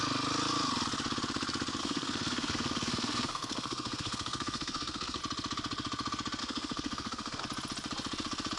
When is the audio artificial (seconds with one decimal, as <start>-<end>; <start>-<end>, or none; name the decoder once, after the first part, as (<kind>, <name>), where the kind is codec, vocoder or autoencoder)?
1.8-5.2 (codec, SNAC); 6.4-7.4